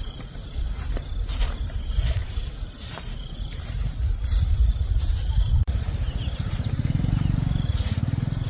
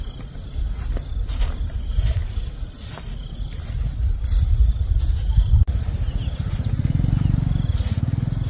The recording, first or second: second